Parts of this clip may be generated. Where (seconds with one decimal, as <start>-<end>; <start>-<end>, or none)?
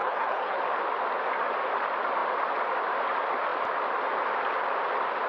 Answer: 0.0-0.6